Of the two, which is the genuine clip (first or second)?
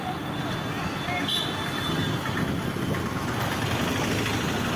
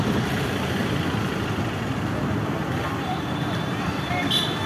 first